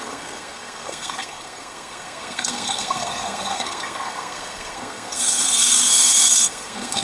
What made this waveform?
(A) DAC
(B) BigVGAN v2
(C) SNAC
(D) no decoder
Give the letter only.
C